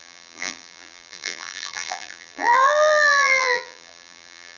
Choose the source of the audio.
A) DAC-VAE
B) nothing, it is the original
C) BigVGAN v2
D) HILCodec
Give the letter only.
C